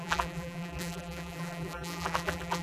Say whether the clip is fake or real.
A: fake